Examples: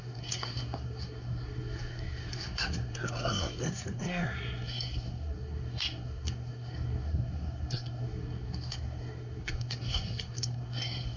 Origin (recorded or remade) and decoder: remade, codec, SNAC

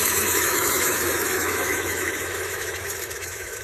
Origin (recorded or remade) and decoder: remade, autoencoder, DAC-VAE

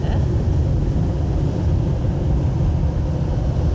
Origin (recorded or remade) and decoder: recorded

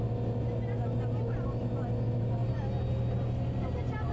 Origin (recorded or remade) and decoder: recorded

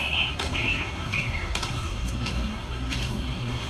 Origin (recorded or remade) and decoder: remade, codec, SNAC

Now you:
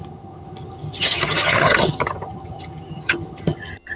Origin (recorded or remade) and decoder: remade, vocoder, HiFi-GAN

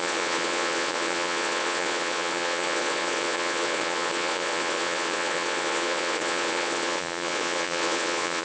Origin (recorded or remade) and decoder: remade, vocoder, Vocos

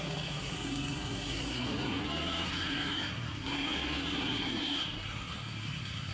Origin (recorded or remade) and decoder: remade, codec, SNAC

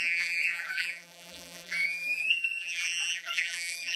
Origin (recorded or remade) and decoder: remade, vocoder, BigVGAN v2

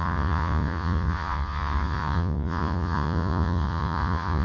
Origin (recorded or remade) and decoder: remade, vocoder, Vocos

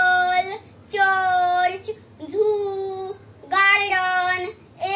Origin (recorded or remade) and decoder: recorded